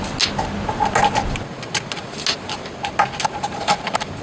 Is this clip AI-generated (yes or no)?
no